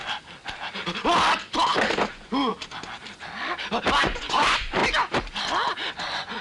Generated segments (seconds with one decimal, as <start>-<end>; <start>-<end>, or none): 2.1-2.5; 4.0-4.8; 5.9-6.4